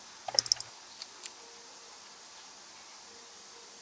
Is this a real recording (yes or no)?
yes